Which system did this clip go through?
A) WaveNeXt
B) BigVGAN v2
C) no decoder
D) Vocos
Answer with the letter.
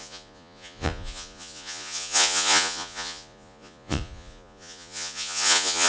D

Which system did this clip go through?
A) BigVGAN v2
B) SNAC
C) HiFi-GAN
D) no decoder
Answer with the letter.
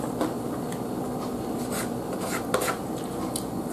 D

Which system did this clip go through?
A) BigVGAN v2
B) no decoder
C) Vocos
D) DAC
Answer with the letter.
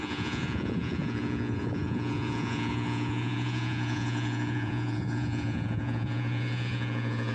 C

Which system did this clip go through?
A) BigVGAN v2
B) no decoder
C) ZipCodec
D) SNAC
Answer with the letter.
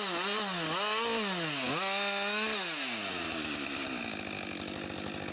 B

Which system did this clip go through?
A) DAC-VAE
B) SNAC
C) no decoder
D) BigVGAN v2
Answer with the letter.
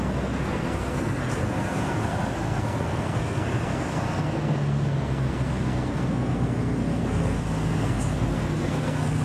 B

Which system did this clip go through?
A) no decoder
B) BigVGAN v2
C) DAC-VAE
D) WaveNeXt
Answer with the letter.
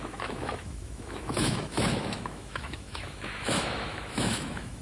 C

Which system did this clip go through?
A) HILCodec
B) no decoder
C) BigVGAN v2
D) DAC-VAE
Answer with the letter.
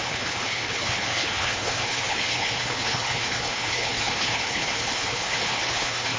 A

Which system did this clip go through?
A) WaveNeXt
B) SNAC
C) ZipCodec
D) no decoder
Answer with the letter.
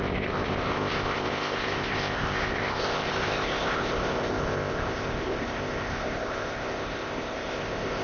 C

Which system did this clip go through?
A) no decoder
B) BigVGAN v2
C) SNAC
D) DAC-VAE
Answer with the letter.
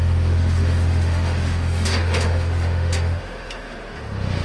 D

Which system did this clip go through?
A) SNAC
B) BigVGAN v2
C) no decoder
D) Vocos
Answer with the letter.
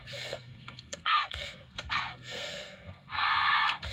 A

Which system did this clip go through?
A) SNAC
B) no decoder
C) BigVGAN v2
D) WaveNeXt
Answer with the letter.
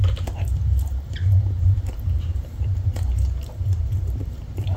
C